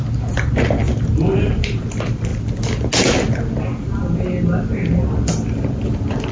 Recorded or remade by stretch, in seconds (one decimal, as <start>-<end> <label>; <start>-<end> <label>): 0.0-6.3 recorded